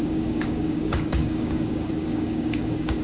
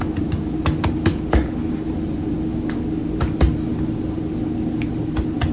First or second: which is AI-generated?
first